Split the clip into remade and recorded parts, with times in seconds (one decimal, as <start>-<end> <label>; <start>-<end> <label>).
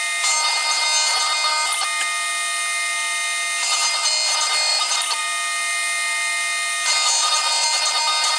0.0-4.7 recorded; 4.7-5.2 remade; 5.2-8.4 recorded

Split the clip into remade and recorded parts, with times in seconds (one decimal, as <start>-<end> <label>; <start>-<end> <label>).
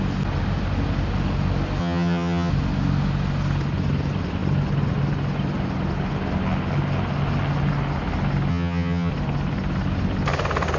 0.0-1.8 recorded; 1.8-2.5 remade; 2.5-8.5 recorded; 8.5-9.1 remade; 9.1-10.8 recorded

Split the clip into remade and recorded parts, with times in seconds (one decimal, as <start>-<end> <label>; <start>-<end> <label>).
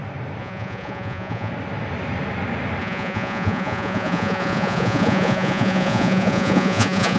0.0-0.4 recorded; 0.4-1.5 remade; 1.5-2.8 recorded; 2.8-7.2 remade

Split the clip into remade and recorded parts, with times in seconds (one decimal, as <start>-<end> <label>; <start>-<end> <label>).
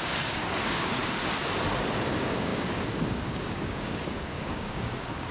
0.0-1.0 remade; 1.0-2.1 recorded; 2.1-5.3 remade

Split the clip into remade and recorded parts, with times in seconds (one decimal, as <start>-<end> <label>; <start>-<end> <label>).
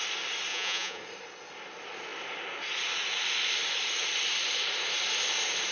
0.0-0.5 recorded; 0.5-1.0 remade; 1.0-5.7 recorded